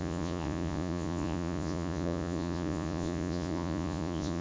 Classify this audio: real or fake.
fake